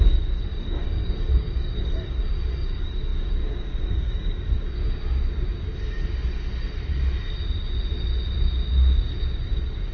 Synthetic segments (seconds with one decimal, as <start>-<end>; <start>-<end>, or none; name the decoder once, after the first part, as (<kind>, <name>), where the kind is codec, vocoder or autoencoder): 0.0-5.7 (codec, DAC); 9.0-9.9